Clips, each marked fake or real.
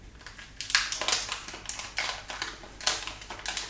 real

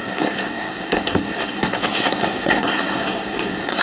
fake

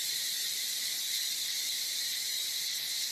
fake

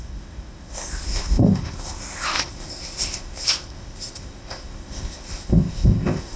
fake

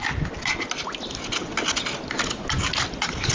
real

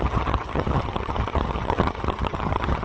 fake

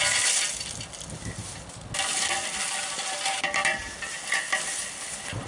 real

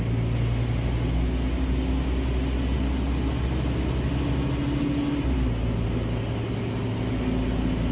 real